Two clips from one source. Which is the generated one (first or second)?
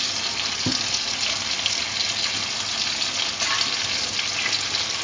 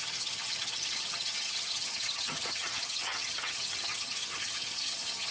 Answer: second